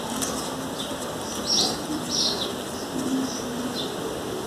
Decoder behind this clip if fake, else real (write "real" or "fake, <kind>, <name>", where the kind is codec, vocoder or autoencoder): real